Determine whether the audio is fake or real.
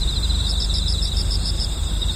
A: fake